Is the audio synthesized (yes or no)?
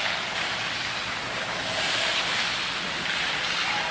no